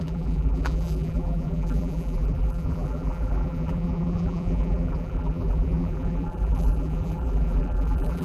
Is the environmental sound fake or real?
fake